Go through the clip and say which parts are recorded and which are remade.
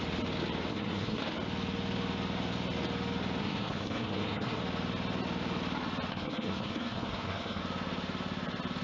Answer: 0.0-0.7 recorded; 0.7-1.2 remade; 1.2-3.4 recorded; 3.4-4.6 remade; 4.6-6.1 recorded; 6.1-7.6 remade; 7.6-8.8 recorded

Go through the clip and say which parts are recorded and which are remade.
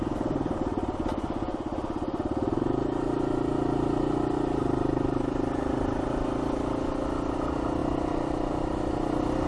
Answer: 0.0-9.5 recorded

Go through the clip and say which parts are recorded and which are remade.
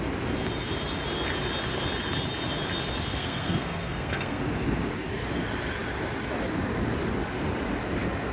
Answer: 0.0-3.1 recorded; 3.1-4.4 remade; 4.4-8.3 recorded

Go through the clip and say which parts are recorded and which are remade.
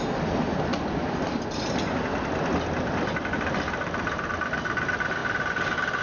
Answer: 0.0-6.0 recorded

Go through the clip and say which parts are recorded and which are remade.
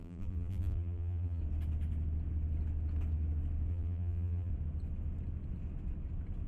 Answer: 0.0-1.4 remade; 1.4-3.7 recorded; 3.7-4.5 remade; 4.5-6.5 recorded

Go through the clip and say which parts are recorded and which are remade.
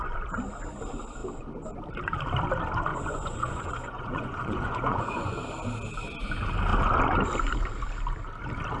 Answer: 0.0-2.9 recorded; 2.9-5.4 remade; 5.4-8.8 recorded